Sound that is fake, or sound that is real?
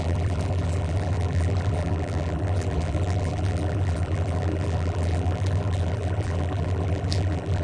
fake